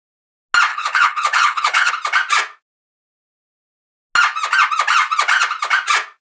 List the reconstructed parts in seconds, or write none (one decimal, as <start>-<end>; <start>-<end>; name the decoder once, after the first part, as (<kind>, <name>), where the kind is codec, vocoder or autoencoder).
0.7-1.9 (codec, HILCodec)